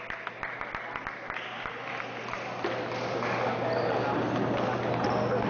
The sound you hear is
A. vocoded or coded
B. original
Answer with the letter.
B